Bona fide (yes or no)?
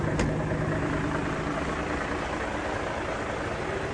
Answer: yes